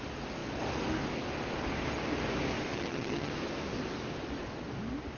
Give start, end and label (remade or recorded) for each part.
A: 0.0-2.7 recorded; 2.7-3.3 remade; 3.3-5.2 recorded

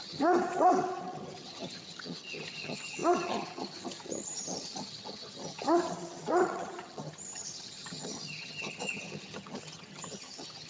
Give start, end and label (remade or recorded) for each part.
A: 0.0-10.7 remade

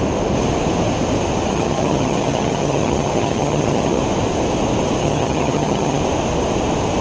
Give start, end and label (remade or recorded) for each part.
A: 0.0-1.5 recorded; 1.5-4.0 remade; 4.0-5.0 recorded; 5.0-6.0 remade; 6.0-7.0 recorded

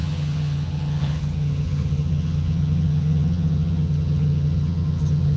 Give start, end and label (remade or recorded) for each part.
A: 0.0-5.4 remade

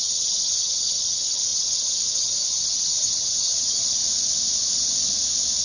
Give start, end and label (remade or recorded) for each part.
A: 0.0-4.0 remade; 4.0-5.6 recorded

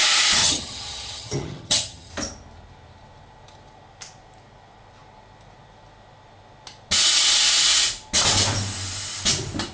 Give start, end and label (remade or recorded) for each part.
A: 0.0-0.4 recorded; 0.4-2.1 remade; 2.1-9.7 recorded

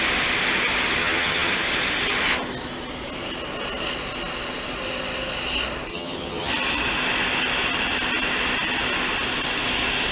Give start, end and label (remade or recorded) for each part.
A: 0.0-1.0 recorded; 1.0-1.5 remade; 1.5-5.9 recorded; 5.9-6.5 remade; 6.5-10.1 recorded

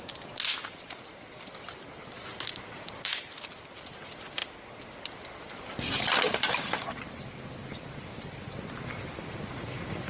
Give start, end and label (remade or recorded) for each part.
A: 0.0-10.1 recorded